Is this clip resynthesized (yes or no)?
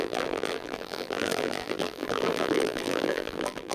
yes